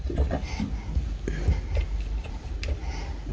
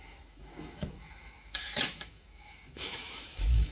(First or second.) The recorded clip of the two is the first